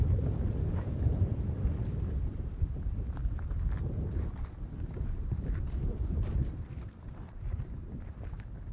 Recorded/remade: remade